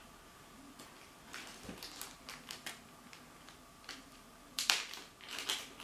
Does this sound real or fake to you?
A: real